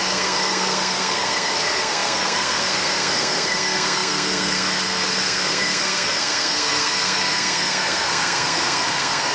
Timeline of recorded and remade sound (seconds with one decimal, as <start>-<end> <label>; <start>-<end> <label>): 0.0-9.3 remade

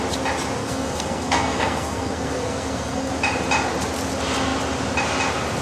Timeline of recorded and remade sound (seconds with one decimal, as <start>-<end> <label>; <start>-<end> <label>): 0.0-0.6 recorded; 0.6-3.1 remade; 3.1-5.6 recorded